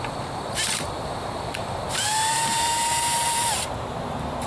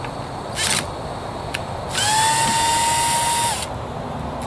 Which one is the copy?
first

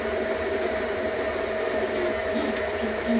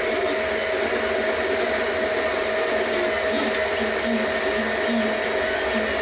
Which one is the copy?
first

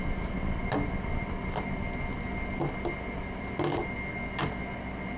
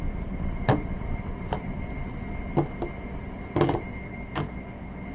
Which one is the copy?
second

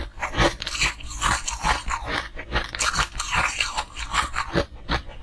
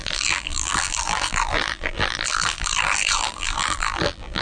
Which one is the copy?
second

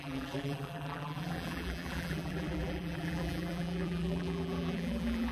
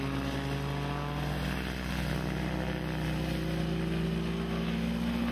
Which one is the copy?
first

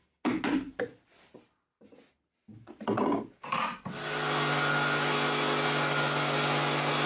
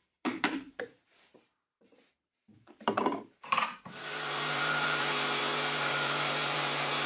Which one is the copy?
second